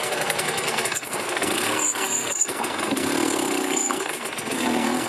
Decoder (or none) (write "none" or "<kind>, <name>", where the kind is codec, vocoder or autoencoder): codec, SNAC